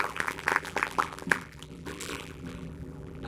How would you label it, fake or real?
fake